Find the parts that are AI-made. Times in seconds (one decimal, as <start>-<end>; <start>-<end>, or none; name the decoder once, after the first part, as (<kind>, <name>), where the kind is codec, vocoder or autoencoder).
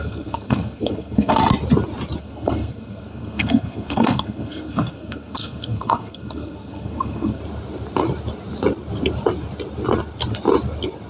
0.0-1.4 (codec, SNAC); 2.2-7.4